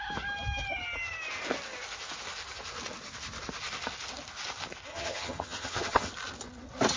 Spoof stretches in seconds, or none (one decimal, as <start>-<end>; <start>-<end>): 4.9-6.1